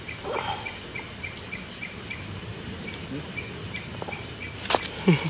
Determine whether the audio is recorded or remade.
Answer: recorded